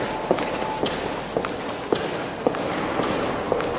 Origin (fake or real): real